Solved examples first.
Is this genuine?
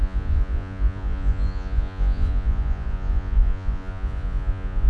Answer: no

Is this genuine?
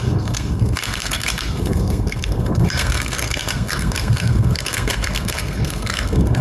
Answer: no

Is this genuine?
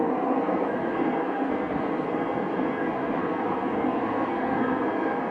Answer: no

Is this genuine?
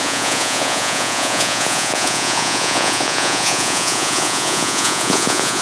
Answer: no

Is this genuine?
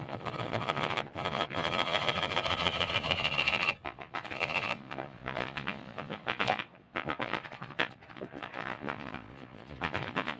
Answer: no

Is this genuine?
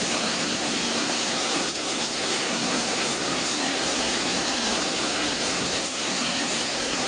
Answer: no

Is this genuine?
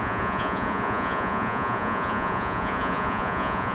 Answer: no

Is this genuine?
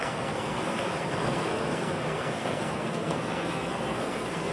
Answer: no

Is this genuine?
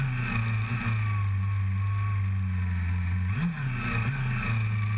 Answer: yes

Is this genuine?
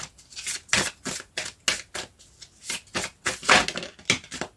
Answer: yes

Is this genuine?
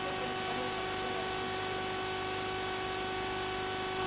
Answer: yes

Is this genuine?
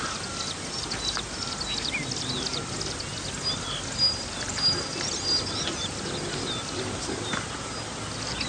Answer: yes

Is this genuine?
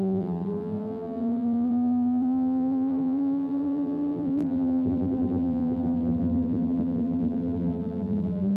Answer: no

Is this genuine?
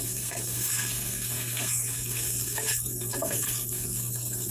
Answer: no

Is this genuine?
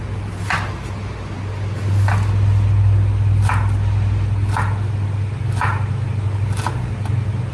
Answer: yes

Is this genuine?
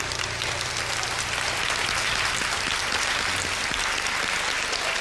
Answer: yes